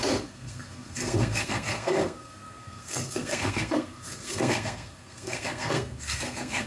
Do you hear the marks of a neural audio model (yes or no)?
yes